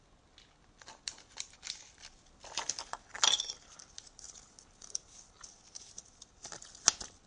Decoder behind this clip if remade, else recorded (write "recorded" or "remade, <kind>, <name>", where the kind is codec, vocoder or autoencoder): recorded